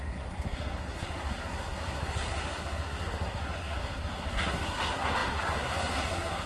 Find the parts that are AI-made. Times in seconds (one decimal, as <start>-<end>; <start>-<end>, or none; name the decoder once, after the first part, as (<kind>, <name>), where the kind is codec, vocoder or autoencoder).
0.0-6.5 (codec, SNAC)